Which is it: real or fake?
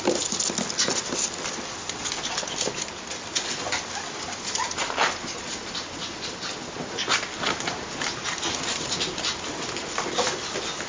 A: real